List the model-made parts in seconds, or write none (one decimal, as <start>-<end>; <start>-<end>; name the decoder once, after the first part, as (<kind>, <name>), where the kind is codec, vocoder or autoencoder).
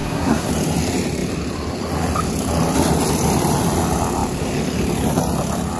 0.0-0.5 (codec, SNAC)